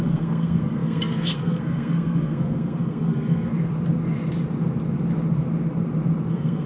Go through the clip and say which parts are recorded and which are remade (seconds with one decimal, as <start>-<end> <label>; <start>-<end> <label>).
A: 0.0-3.5 remade; 3.5-6.3 recorded; 6.3-6.7 remade